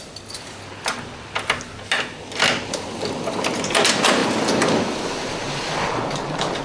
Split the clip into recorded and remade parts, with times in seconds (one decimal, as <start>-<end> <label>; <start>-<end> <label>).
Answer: 0.0-6.6 recorded